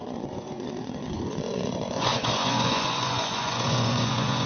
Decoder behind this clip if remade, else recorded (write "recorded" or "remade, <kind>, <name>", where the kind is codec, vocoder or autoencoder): remade, vocoder, Vocos